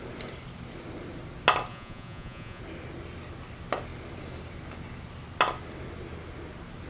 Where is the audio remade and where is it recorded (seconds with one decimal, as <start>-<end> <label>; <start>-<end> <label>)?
0.0-1.7 recorded; 1.7-2.6 remade; 2.6-6.9 recorded